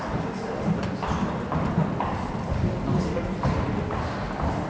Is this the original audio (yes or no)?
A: yes